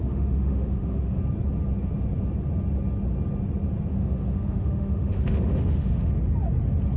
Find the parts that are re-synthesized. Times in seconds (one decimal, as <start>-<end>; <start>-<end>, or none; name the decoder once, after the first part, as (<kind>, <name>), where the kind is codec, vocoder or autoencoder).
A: 0.0-1.2 (autoencoder, DAC-VAE); 3.9-6.1